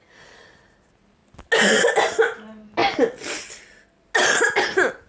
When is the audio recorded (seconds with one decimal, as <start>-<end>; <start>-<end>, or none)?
0.0-5.1